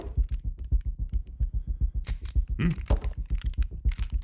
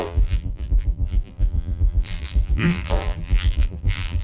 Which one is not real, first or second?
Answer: second